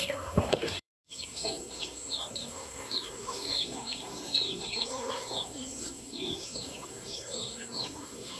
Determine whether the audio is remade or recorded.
remade